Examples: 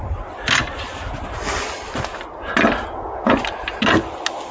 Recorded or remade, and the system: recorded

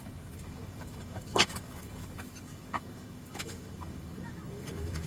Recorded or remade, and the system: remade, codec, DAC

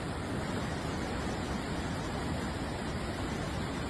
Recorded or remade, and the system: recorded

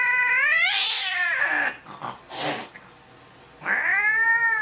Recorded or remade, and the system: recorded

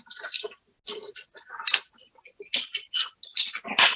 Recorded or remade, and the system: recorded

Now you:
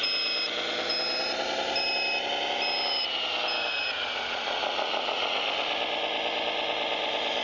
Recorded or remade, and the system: recorded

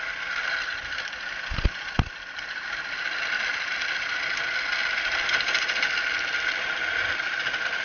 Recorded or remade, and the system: recorded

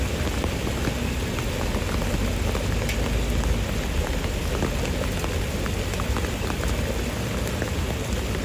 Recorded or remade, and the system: recorded